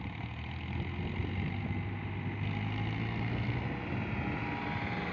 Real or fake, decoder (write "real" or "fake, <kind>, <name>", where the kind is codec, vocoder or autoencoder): real